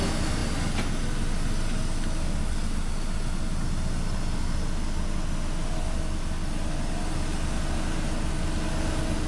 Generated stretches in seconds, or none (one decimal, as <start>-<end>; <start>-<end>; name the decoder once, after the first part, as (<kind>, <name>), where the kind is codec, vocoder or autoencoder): none

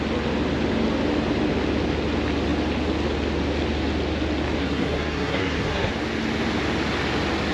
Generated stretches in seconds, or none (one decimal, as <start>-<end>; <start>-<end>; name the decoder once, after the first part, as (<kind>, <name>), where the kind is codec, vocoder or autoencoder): 4.6-5.9 (codec, SNAC)